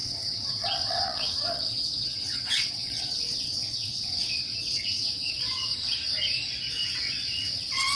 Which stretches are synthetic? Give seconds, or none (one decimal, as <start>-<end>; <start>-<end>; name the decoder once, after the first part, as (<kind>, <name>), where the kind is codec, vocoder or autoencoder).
0.0-5.7 (vocoder, WaveNeXt); 6.7-8.0